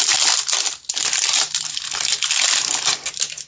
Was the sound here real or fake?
real